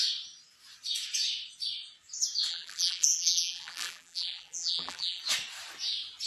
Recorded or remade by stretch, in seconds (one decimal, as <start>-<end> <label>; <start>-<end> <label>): 0.0-2.5 recorded; 2.5-5.2 remade; 5.2-6.3 recorded